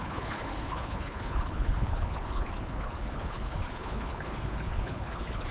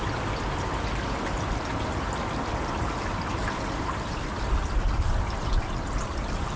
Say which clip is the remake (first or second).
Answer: first